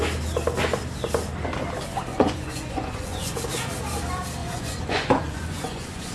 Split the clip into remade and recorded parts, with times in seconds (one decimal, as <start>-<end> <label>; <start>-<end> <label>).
0.0-2.1 recorded; 2.1-3.4 remade; 3.4-4.4 recorded; 4.4-6.1 remade